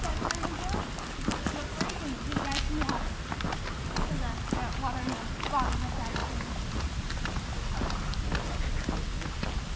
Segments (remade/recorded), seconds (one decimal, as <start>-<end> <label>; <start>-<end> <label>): 0.0-9.8 recorded